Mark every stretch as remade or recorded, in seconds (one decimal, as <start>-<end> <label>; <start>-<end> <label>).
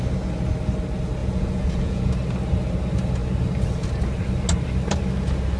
0.0-1.2 recorded; 1.2-2.1 remade; 2.1-5.6 recorded